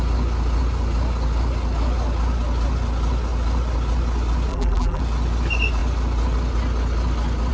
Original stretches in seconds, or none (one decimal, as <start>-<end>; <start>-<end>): 0.0-4.5; 5.0-7.5

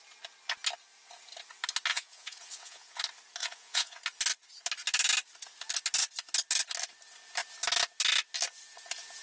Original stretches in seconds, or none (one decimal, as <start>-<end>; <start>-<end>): 0.0-1.9; 3.0-3.4; 4.0-9.2

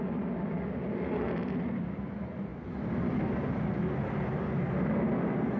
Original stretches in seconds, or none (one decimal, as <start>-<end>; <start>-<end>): 0.0-5.6

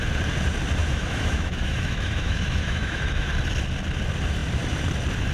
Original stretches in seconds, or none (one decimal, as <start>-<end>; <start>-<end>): 0.0-0.8; 3.3-5.3

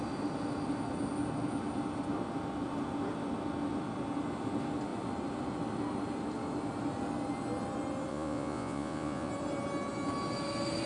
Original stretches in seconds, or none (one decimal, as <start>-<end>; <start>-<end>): 0.0-8.1; 9.3-10.9